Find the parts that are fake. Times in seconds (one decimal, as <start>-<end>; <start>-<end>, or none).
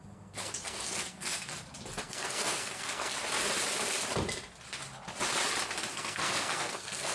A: 0.0-1.5; 2.0-3.1; 5.9-7.1